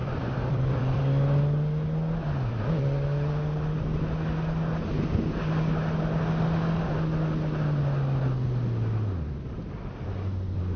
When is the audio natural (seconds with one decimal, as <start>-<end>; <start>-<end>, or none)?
1.0-10.8